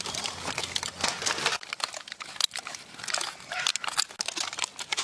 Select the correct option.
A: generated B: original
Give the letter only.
B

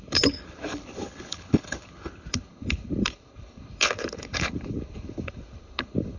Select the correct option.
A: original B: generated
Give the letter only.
B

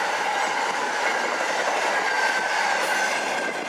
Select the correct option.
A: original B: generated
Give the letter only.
A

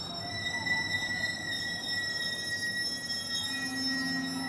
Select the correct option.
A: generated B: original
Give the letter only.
B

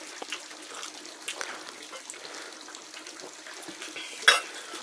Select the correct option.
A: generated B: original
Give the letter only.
B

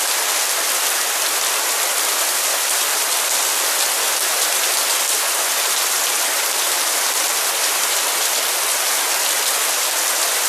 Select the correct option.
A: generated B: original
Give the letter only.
A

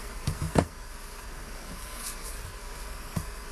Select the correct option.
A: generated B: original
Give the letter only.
A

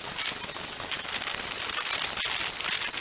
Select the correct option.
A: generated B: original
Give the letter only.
B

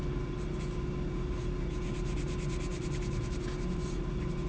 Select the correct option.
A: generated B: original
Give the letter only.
B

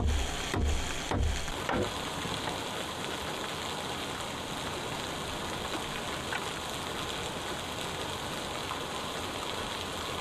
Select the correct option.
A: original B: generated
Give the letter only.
A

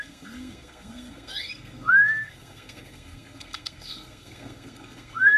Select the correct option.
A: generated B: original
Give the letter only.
A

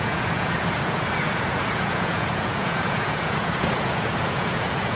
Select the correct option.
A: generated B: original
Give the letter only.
A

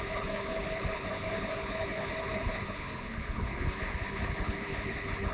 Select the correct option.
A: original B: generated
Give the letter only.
B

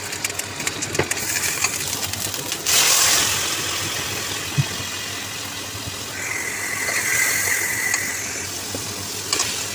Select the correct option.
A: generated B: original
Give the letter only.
B